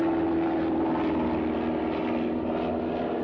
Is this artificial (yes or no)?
no